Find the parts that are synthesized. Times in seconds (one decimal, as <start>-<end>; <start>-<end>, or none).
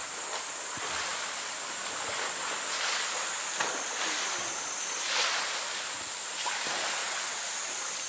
0.0-8.1